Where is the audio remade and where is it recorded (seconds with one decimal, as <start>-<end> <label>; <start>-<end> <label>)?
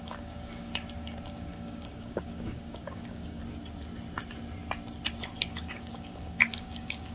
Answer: 0.0-0.7 remade; 0.7-1.3 recorded; 1.3-3.4 remade; 3.4-5.6 recorded; 5.6-7.1 remade